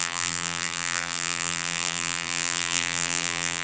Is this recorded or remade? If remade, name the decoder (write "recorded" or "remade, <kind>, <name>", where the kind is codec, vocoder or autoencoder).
remade, vocoder, BigVGAN v2